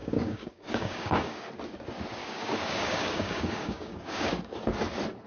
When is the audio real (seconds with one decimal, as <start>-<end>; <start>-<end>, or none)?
1.6-2.2; 4.5-5.3

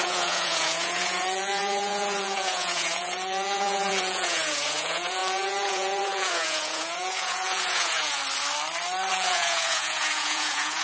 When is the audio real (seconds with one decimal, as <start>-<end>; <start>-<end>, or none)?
8.2-9.1

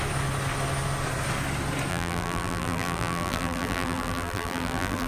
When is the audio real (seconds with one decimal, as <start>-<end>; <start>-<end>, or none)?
0.0-1.9

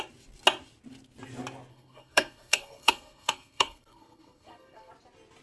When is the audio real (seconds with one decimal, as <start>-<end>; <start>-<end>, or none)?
0.0-1.7; 4.9-5.4

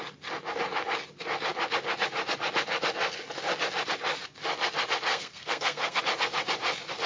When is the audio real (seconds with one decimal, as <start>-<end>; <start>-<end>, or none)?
0.0-5.1; 6.0-7.1

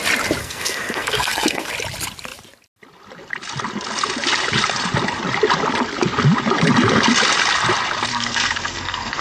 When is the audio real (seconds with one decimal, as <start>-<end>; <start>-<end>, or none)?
0.0-0.4; 1.7-8.1

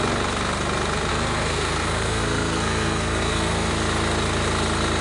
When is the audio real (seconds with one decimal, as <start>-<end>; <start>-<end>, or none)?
0.0-1.1; 3.7-5.0